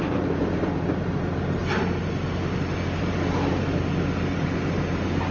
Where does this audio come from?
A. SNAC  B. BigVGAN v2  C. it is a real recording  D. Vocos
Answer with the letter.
C